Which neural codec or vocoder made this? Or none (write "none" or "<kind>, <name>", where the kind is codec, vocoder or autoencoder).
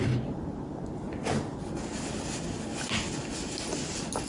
none